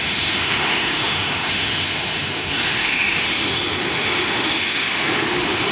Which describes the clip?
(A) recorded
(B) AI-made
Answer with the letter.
B